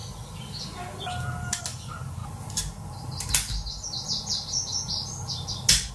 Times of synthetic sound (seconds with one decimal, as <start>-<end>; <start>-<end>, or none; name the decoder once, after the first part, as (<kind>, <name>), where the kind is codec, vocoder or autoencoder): 1.6-2.2 (vocoder, BigVGAN v2)